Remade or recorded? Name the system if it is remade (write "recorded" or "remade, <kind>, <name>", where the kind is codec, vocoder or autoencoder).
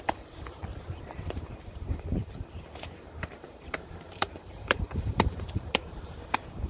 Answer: remade, vocoder, BigVGAN v2